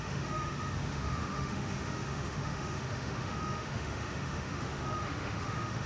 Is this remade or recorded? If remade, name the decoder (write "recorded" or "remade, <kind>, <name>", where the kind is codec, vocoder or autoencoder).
remade, autoencoder, DAC-VAE